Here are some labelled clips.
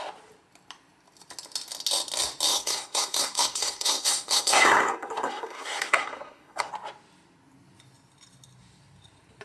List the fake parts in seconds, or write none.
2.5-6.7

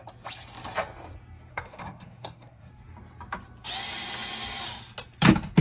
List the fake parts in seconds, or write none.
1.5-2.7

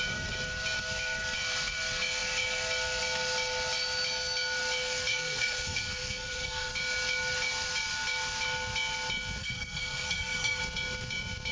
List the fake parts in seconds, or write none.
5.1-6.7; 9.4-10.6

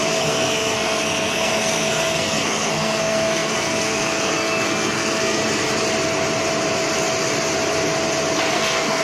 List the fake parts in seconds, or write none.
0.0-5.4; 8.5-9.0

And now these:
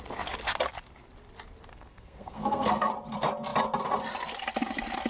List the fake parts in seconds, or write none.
1.7-2.9

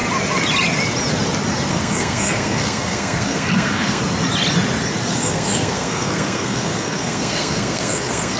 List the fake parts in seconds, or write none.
1.7-4.0; 5.1-8.4